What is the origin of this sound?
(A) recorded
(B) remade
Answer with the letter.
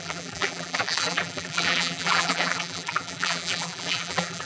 B